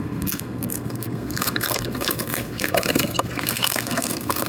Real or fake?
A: fake